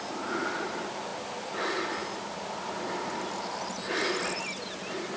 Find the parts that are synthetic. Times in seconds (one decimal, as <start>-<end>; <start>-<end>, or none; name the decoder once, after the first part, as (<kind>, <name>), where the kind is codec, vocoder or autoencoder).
none